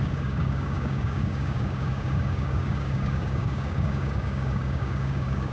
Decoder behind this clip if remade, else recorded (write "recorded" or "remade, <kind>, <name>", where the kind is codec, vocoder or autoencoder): remade, codec, DAC